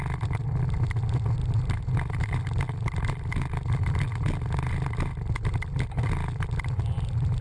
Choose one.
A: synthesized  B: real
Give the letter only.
B